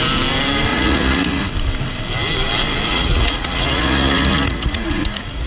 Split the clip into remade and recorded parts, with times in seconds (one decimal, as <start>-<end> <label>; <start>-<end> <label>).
0.0-0.7 recorded; 0.7-1.4 remade; 1.4-2.9 recorded; 2.9-5.5 remade